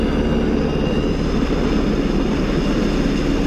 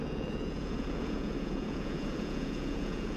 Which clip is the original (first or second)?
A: first